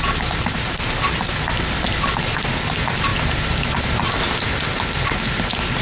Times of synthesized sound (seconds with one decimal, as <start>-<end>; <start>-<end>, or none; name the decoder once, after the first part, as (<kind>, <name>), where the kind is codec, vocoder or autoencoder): none